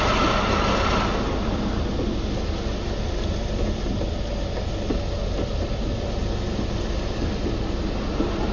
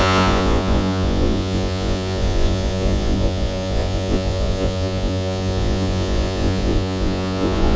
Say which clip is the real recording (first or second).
first